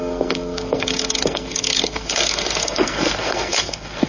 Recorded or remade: remade